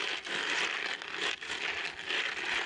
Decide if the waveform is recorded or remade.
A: recorded